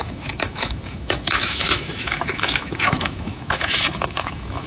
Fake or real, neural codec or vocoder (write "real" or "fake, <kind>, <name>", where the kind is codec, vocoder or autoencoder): fake, autoencoder, DAC-VAE